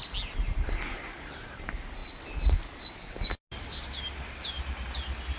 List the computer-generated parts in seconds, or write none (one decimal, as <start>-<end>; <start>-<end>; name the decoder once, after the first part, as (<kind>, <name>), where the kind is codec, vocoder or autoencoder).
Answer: none